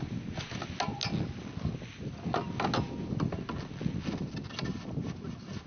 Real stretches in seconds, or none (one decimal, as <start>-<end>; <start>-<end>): 0.0-5.7